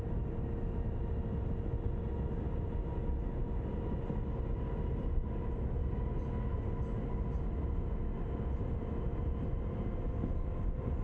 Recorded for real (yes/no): yes